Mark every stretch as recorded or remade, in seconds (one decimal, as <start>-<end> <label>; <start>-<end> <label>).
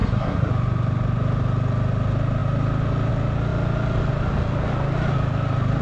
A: 0.0-0.5 remade; 0.5-5.8 recorded